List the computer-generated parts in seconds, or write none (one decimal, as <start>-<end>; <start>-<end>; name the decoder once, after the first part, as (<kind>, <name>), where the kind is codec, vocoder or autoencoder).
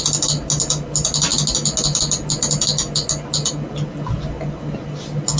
none